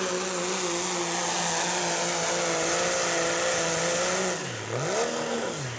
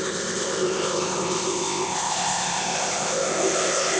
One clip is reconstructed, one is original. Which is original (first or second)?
first